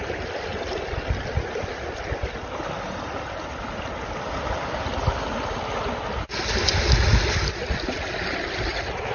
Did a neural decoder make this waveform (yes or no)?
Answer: no